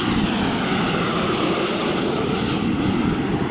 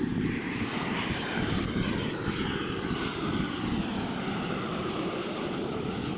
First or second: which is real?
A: first